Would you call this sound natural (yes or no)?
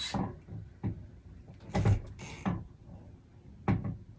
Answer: yes